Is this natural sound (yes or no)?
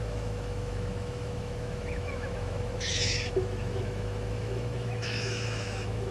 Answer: no